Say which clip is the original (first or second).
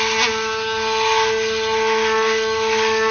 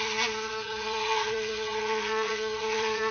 first